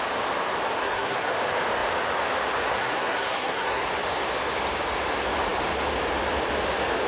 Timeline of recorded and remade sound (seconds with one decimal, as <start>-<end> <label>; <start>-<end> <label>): 0.0-0.8 recorded; 0.8-1.3 remade; 1.3-2.7 recorded; 2.7-3.8 remade; 3.8-7.1 recorded